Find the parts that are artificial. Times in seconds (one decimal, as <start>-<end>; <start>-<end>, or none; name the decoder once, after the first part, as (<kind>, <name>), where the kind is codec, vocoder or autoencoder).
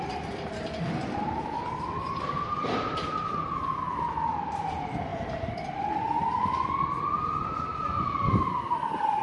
2.0-3.8 (vocoder, BigVGAN v2)